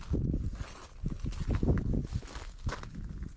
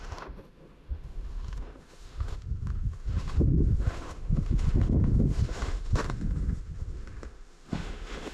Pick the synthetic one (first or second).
second